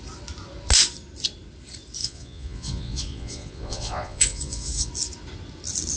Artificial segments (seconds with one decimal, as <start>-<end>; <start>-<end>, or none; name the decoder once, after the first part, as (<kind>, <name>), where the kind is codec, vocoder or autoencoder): 2.0-4.9 (vocoder, Vocos)